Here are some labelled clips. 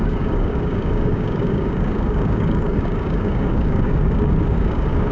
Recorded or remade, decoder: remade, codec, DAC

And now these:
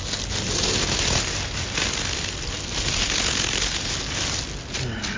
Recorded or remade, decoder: recorded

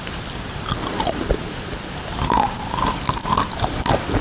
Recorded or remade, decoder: recorded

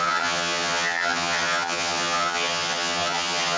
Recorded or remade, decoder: remade, vocoder, HiFi-GAN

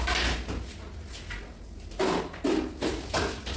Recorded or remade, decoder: recorded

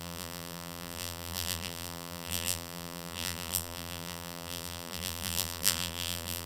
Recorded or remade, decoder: remade, vocoder, BigVGAN v2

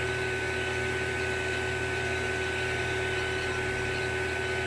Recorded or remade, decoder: recorded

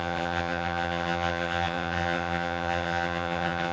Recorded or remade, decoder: remade, vocoder, HiFi-GAN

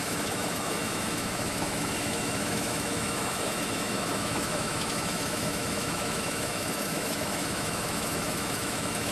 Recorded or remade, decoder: remade, autoencoder, DAC-VAE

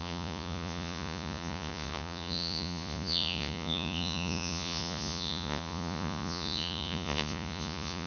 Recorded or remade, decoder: remade, vocoder, Vocos